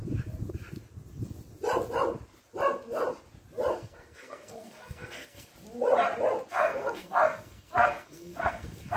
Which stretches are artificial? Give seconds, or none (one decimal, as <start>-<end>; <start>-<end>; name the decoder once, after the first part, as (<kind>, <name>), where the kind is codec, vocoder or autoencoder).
3.7-5.5 (codec, SNAC); 6.5-9.0